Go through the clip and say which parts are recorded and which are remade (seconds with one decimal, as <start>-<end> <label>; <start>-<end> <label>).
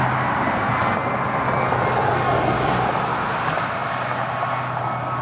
0.0-5.2 recorded